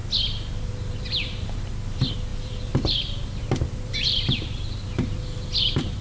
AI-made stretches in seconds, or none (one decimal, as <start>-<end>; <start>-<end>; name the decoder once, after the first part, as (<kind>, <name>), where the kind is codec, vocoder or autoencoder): 0.7-6.0 (vocoder, BigVGAN v2)